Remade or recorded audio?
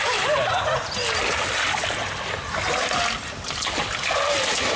recorded